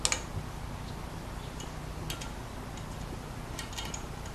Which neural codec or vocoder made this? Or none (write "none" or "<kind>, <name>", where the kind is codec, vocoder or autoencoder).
none